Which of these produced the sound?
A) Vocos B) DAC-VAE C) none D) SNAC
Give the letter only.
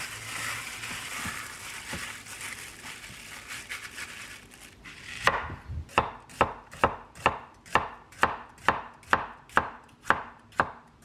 C